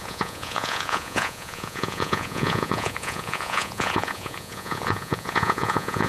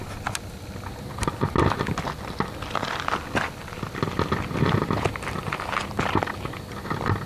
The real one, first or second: second